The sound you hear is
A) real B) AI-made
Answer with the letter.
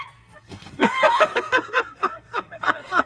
B